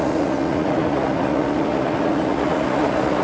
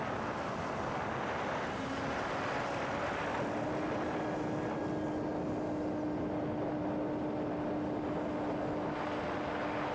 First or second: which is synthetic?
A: first